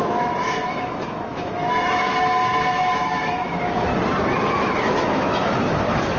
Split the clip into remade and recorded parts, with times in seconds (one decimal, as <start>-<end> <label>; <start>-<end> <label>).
0.0-3.9 remade; 3.9-4.6 recorded; 4.6-6.2 remade

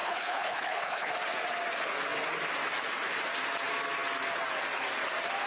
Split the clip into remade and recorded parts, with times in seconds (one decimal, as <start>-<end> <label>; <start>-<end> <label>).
0.0-1.1 remade; 1.1-5.5 recorded

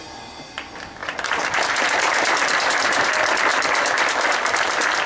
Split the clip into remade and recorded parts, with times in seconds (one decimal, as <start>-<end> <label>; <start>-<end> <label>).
0.0-1.0 recorded; 1.0-3.1 remade; 3.1-3.5 recorded; 3.5-5.1 remade

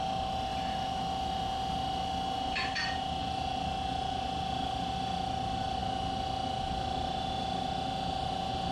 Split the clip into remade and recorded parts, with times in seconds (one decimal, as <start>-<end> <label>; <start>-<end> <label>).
0.0-8.7 recorded

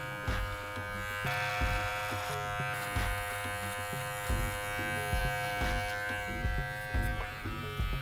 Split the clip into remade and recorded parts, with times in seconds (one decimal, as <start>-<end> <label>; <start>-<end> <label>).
0.0-8.0 recorded

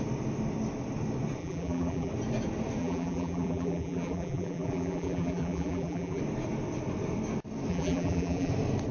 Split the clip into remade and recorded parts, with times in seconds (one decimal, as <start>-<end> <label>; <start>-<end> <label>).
0.0-1.4 recorded; 1.4-2.1 remade; 2.1-2.8 recorded; 2.8-6.2 remade; 6.2-7.7 recorded; 7.7-8.5 remade; 8.5-8.9 recorded

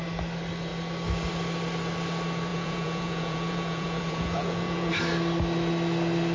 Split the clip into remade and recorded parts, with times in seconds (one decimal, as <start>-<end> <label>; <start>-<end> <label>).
0.0-2.5 recorded; 2.5-4.9 remade; 4.9-6.3 recorded